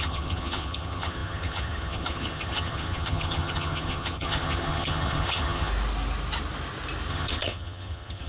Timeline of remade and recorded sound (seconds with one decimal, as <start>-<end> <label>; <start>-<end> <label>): 0.0-5.7 remade; 5.7-7.1 recorded; 7.1-8.3 remade